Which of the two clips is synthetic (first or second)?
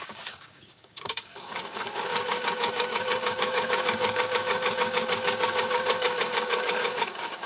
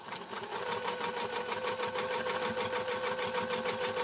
first